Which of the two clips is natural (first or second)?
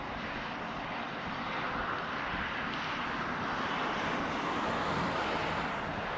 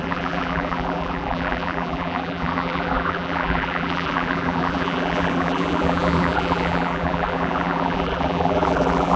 first